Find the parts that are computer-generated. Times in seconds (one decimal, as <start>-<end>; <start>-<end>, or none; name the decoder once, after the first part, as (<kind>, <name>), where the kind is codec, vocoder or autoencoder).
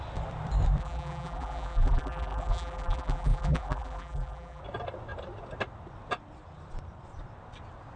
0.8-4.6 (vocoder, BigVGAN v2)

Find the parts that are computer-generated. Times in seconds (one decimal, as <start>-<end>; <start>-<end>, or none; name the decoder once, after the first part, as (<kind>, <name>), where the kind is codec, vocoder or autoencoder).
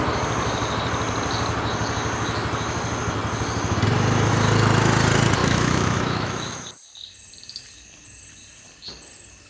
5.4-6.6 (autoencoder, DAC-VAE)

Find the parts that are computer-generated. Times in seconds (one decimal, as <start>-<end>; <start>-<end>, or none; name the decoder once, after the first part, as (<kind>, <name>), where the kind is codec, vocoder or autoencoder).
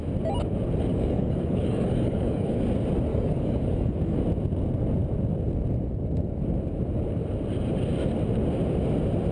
0.9-2.6 (codec, DAC); 3.1-4.2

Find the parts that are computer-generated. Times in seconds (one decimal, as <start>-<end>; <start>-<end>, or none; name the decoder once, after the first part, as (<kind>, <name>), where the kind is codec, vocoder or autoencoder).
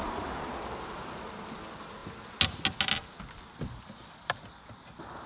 none